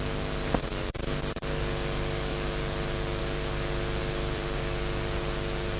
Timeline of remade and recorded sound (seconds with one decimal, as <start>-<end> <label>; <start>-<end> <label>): 0.0-4.0 recorded; 4.0-4.6 remade; 4.6-5.8 recorded